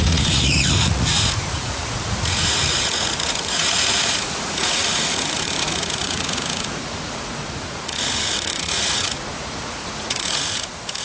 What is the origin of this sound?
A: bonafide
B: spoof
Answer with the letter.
B